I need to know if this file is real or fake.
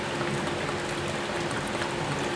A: real